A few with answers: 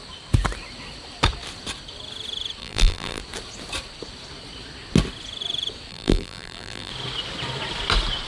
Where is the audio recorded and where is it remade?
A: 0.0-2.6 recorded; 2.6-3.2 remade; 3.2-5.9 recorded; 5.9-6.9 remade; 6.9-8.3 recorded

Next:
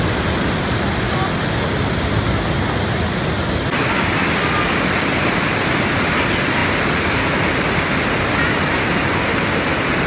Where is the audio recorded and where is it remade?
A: 0.0-10.1 recorded

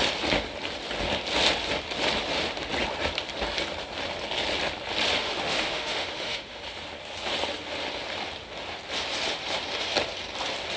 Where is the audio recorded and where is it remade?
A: 0.0-5.2 recorded; 5.2-6.6 remade; 6.6-10.8 recorded

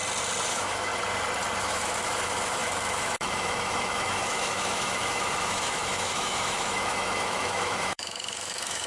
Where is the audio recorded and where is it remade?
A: 0.0-0.5 recorded; 0.5-0.9 remade; 0.9-1.6 recorded; 1.6-8.9 remade